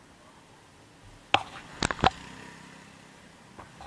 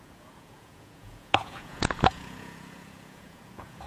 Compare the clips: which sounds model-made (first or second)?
second